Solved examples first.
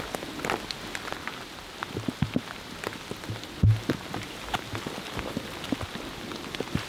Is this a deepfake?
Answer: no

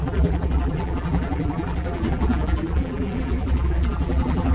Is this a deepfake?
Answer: yes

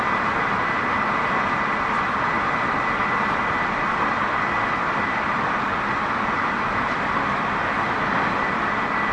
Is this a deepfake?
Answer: no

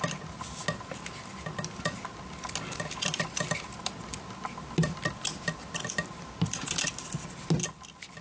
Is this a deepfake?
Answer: no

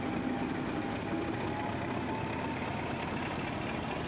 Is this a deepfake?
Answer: no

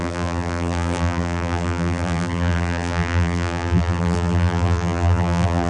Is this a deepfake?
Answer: yes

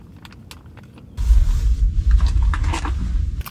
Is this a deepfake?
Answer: no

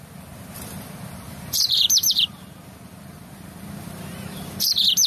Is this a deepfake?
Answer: yes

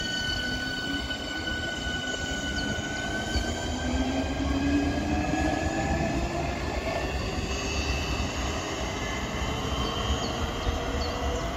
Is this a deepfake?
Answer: no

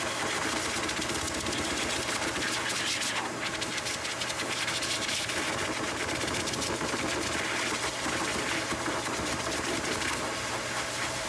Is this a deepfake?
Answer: no